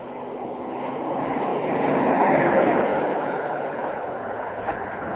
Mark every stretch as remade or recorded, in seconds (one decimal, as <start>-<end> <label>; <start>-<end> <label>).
0.0-5.2 remade